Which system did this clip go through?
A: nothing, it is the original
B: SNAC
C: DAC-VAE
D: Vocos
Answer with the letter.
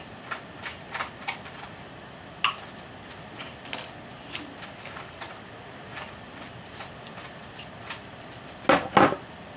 A